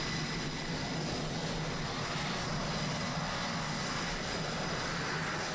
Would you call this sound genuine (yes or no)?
yes